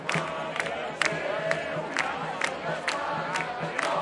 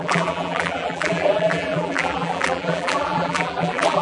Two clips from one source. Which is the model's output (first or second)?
second